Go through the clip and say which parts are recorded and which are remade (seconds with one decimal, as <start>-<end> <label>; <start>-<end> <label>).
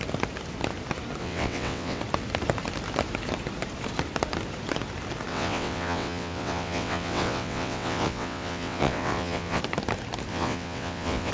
0.0-1.2 recorded; 1.2-2.0 remade; 2.0-5.3 recorded; 5.3-9.6 remade; 9.6-10.3 recorded; 10.3-11.3 remade